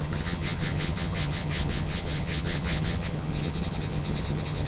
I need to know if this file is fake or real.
fake